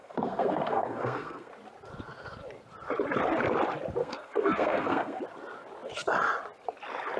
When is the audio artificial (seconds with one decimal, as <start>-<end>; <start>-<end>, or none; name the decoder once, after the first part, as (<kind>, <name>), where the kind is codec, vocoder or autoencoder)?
0.0-1.5 (codec, SNAC); 4.0-5.2